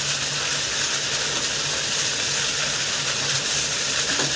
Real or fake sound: real